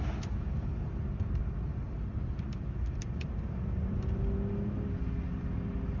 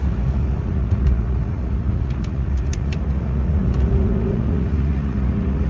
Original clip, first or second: first